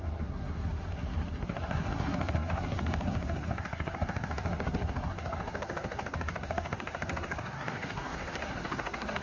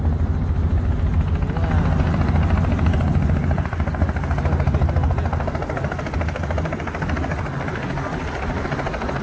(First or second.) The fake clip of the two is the first